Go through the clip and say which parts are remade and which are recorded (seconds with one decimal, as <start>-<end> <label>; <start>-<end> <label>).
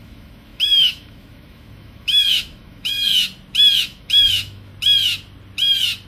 0.0-3.1 remade; 3.1-3.8 recorded; 3.8-4.7 remade; 4.7-6.1 recorded